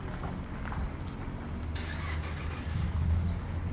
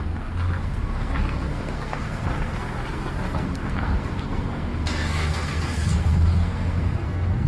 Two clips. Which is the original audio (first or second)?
first